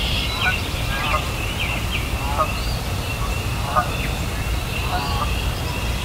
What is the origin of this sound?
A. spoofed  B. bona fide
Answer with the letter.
A